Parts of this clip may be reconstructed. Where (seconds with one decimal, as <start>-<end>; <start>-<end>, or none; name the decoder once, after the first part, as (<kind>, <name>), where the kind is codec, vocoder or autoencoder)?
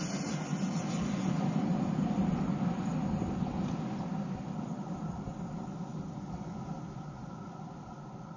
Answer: none